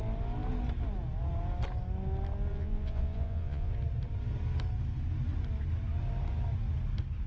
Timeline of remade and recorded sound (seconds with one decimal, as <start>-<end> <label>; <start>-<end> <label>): 0.0-2.5 recorded; 2.5-3.7 remade; 3.7-7.3 recorded